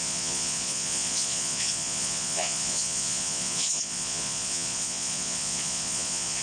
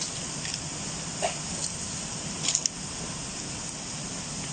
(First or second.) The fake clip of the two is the first